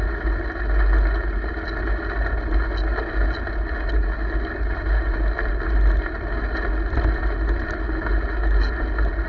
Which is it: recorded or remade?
recorded